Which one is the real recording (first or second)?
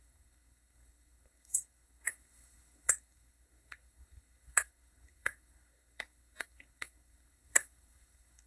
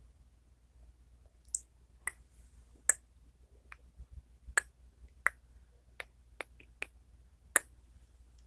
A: second